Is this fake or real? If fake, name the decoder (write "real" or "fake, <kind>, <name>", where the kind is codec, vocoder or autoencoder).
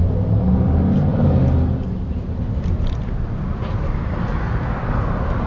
real